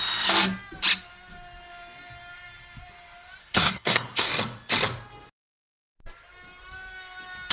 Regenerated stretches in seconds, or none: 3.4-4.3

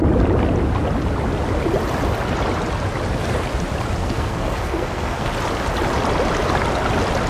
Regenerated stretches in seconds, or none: 4.0-5.3

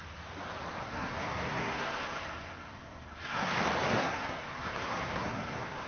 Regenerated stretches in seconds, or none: 0.8-3.5; 4.0-5.9

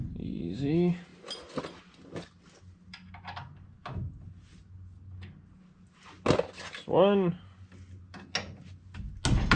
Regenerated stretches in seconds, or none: none

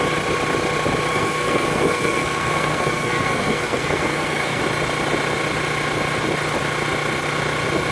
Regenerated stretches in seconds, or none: 1.1-4.6